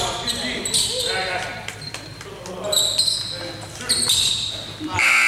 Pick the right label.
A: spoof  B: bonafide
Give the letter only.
B